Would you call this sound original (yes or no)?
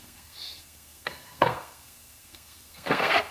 no